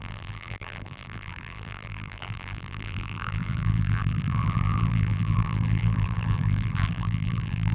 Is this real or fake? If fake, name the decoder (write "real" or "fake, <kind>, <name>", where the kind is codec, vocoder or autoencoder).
fake, vocoder, BigVGAN v2